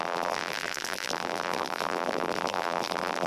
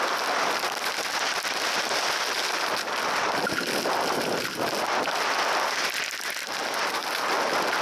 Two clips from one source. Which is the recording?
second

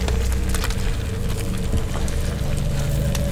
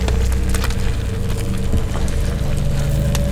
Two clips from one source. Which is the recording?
second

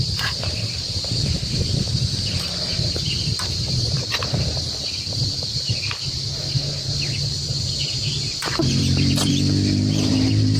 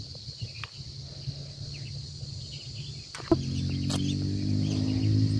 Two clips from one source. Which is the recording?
second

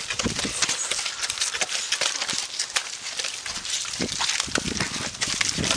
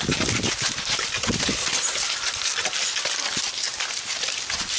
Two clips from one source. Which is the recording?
first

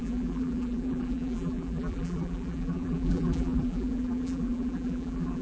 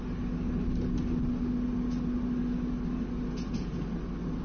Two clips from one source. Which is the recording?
second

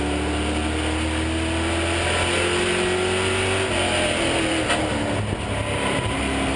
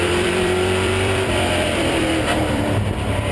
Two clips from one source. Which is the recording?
first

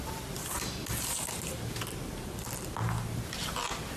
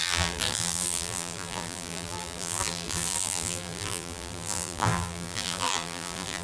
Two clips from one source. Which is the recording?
first